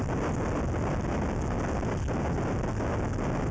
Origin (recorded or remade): recorded